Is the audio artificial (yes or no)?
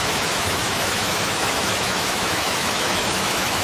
yes